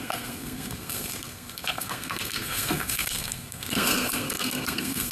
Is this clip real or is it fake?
fake